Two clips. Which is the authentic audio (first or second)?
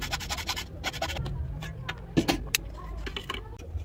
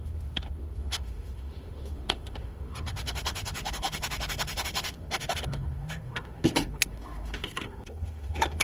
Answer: first